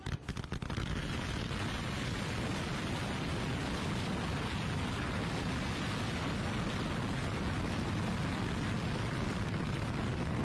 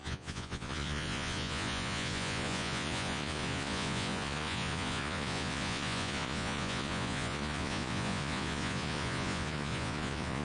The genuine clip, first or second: first